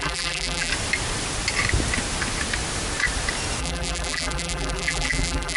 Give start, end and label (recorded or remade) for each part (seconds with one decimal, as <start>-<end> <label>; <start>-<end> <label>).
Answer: 0.0-0.7 remade; 0.7-3.6 recorded; 3.6-5.6 remade